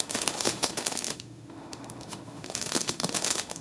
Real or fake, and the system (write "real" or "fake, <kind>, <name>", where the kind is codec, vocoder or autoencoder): fake, autoencoder, DAC-VAE